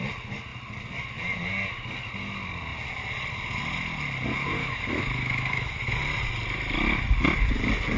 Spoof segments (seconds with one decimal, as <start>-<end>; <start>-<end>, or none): 4.6-6.0